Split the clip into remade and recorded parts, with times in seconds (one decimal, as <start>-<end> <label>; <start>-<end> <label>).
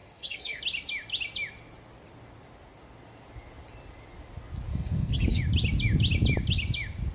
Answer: 0.0-0.6 remade; 0.6-4.7 recorded; 4.7-5.4 remade; 5.4-7.1 recorded